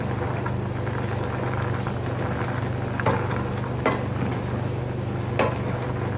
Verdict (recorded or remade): recorded